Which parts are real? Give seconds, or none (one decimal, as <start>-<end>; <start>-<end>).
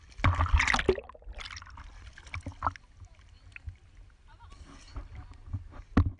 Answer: 0.0-6.2